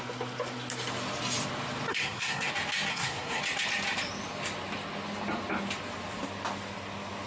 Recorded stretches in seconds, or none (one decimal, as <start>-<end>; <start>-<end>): 0.0-1.9; 2.5-2.9; 3.4-7.3